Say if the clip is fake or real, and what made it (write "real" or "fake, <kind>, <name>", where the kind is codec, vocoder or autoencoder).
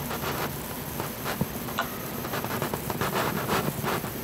fake, vocoder, BigVGAN v2